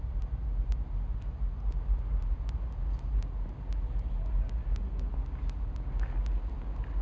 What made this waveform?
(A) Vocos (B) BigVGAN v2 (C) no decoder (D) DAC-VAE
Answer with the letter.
C